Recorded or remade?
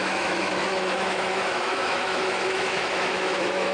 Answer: remade